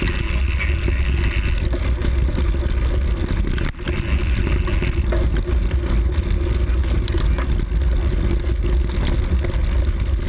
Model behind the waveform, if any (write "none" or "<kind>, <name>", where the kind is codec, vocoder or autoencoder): none